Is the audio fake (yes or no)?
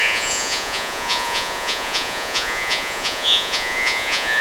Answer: yes